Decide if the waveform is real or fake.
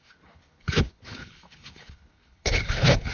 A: fake